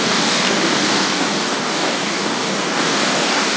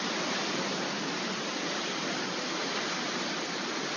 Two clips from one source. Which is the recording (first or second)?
second